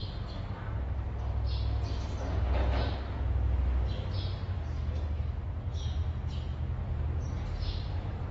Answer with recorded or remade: recorded